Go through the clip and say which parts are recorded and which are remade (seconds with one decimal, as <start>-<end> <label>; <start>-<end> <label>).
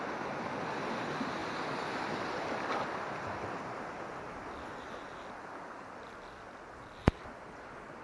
0.0-8.0 recorded